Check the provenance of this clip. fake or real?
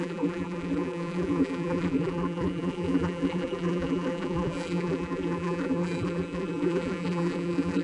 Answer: fake